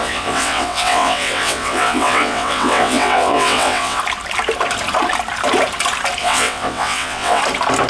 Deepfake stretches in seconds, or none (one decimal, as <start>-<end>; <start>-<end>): 0.0-4.0; 6.2-7.4